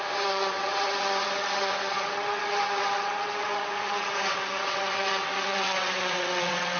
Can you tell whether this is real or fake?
fake